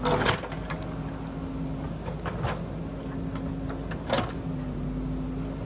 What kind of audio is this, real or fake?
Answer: real